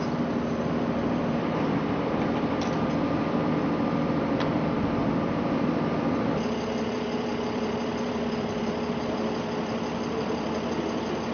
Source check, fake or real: fake